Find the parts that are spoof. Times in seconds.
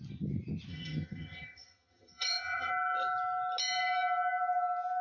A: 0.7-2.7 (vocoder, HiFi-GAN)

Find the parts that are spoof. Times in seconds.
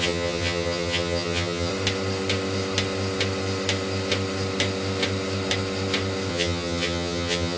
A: 0.0-1.7 (vocoder, HiFi-GAN); 6.3-7.6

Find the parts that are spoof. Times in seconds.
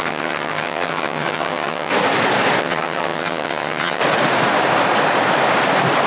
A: 0.0-1.9 (vocoder, HiFi-GAN); 2.6-4.0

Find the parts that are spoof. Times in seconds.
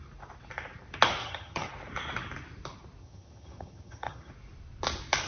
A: 1.2-1.7 (vocoder, HiFi-GAN); 3.0-4.3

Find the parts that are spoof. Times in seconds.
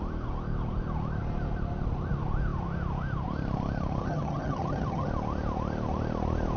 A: 4.0-5.1 (vocoder, HiFi-GAN)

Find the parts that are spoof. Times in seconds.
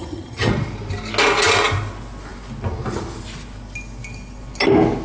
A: 0.0-0.5 (vocoder, HiFi-GAN)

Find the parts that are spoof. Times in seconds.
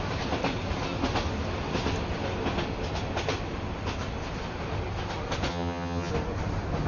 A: 5.5-6.1 (vocoder, HiFi-GAN)